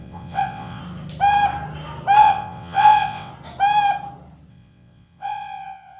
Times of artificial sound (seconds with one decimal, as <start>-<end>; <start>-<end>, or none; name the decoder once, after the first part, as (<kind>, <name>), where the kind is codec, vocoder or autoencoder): 0.0-0.8 (vocoder, WaveNeXt); 2.2-3.3; 4.5-6.0